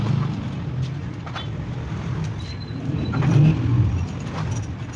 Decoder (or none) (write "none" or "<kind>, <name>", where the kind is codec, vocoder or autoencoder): none